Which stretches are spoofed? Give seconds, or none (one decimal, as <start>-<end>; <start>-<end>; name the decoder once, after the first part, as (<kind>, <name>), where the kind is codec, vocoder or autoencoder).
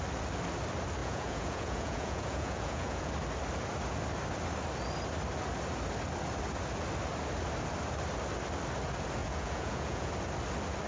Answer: 1.0-3.1 (vocoder, Vocos); 9.2-10.1